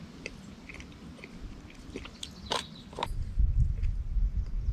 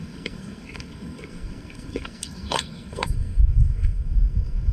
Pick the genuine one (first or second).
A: first